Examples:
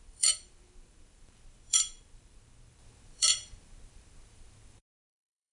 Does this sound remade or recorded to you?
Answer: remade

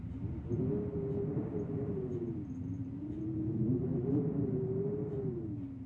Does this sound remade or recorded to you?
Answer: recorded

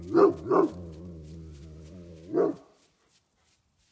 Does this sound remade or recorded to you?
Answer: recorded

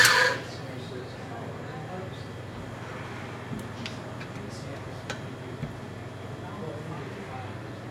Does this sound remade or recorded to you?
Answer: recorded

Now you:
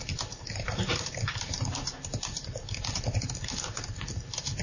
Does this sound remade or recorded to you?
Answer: remade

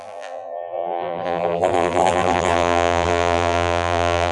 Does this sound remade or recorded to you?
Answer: remade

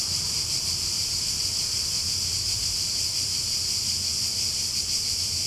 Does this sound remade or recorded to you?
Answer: remade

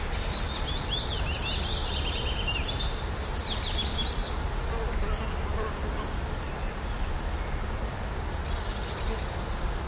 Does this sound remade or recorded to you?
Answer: recorded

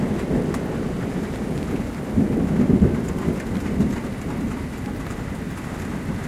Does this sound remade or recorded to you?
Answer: remade